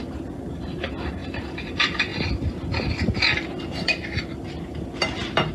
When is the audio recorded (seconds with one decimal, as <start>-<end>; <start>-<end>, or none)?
0.0-5.5